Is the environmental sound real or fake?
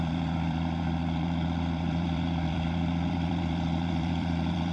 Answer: fake